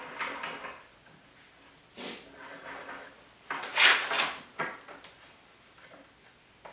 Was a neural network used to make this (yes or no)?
no